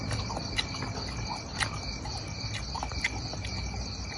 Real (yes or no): yes